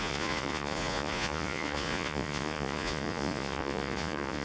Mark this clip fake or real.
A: fake